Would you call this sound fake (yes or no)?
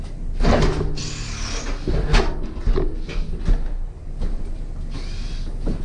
no